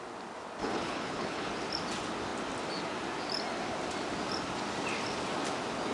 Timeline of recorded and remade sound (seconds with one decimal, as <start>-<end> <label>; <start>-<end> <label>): 0.0-0.6 recorded; 0.6-1.5 remade; 1.5-5.9 recorded